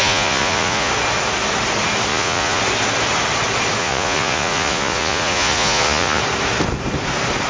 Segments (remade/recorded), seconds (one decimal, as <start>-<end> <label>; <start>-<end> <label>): 0.0-0.9 remade; 0.9-2.1 recorded; 2.1-2.6 remade; 2.6-3.8 recorded; 3.8-6.2 remade; 6.2-7.5 recorded